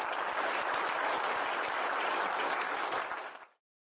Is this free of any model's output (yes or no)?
yes